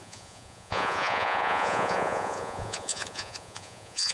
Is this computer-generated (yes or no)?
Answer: yes